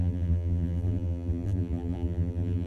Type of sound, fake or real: fake